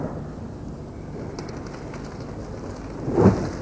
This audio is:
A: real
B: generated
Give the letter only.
A